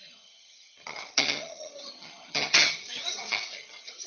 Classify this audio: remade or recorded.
remade